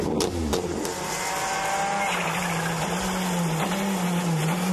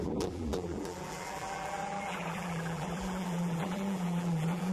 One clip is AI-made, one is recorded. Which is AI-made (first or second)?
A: second